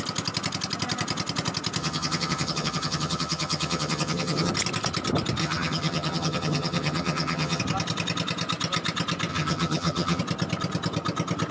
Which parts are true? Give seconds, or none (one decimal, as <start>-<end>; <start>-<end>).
0.0-1.8; 4.5-5.4; 7.6-9.3; 10.2-11.5